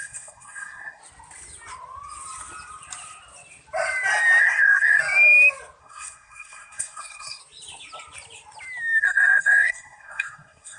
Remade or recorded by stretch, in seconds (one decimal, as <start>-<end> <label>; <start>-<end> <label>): 0.0-1.0 remade; 1.0-4.4 recorded; 4.4-5.0 remade; 5.0-5.8 recorded; 5.8-7.4 remade; 7.4-9.0 recorded; 9.0-10.8 remade